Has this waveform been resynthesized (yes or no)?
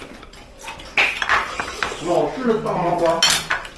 no